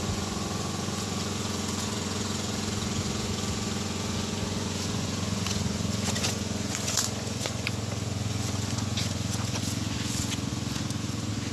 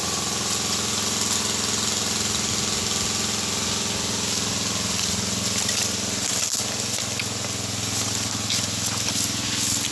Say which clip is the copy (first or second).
first